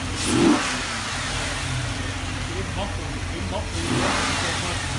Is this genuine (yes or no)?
yes